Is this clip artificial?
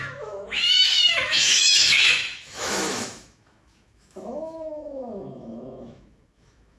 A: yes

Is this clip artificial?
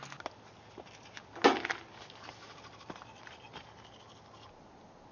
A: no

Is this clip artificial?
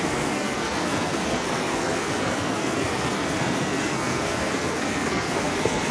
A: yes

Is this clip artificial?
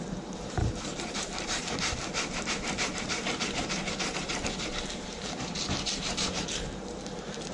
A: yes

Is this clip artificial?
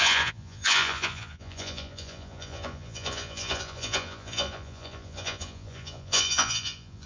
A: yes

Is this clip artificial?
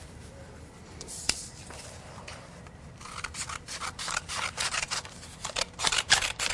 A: yes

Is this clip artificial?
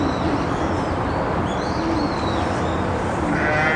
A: no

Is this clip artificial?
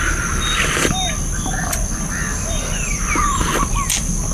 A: no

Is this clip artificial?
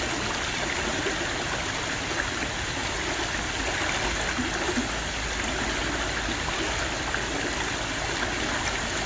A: no